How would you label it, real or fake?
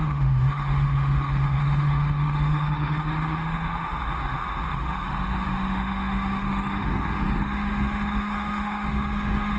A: fake